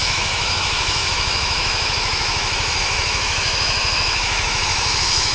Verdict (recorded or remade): remade